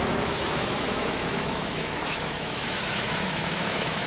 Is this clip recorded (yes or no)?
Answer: no